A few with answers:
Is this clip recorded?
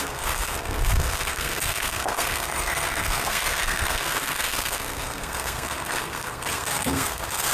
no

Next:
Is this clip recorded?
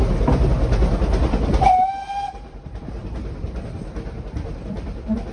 yes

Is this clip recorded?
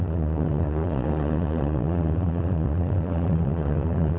no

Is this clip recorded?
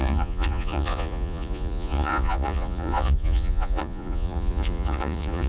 no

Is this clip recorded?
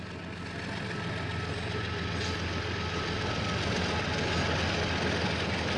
yes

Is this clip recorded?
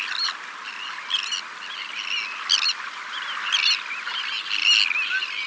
yes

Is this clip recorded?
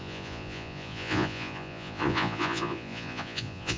no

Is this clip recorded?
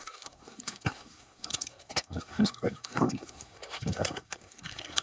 no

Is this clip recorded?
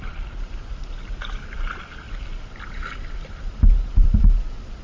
yes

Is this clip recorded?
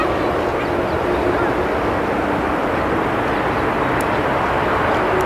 yes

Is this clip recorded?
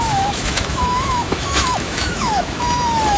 no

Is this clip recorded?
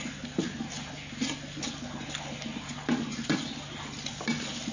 yes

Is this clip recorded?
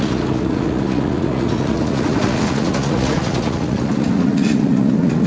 no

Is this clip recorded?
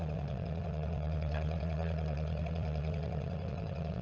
no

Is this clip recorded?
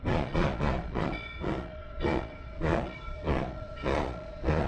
no